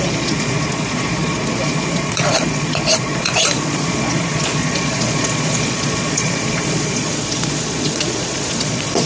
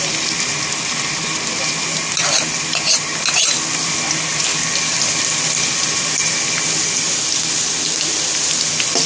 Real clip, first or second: second